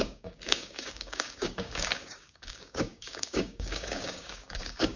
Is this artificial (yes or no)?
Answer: yes